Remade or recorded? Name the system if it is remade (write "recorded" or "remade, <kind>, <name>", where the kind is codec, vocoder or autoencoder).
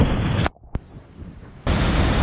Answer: recorded